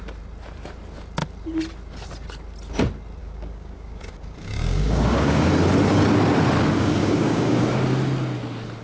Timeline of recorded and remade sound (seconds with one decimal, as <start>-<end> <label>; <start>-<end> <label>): 0.0-3.2 recorded; 3.2-5.5 remade; 5.5-7.0 recorded; 7.0-7.8 remade; 7.8-8.8 recorded